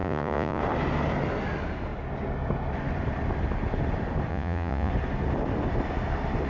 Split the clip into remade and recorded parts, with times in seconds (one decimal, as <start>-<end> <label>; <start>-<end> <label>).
0.0-0.6 remade; 0.6-4.3 recorded; 4.3-4.9 remade; 4.9-6.5 recorded